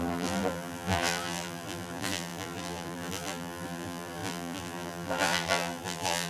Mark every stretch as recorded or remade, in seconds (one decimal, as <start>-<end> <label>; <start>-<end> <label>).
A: 0.0-6.3 remade